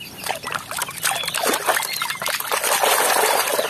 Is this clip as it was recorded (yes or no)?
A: yes